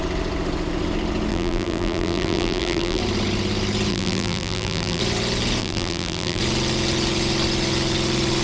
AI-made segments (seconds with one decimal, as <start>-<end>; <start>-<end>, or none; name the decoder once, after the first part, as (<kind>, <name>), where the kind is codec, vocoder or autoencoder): 1.3-3.0 (vocoder, BigVGAN v2); 3.9-5.0; 5.6-6.4